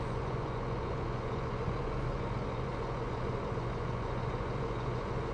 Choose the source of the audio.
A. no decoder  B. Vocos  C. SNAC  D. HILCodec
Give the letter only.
B